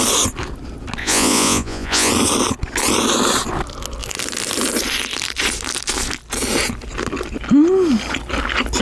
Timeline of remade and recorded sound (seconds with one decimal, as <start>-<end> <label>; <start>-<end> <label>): 0.0-1.0 recorded; 1.0-2.1 remade; 2.1-8.8 recorded